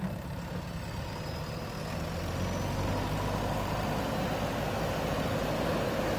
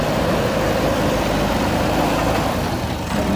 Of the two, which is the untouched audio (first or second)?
first